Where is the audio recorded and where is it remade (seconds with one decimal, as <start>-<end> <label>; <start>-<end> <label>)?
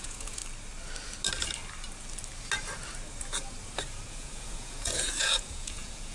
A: 0.0-0.4 remade; 0.4-4.1 recorded; 4.1-6.1 remade